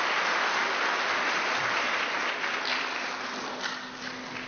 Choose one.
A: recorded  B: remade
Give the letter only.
A